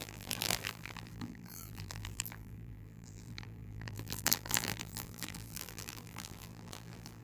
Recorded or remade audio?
remade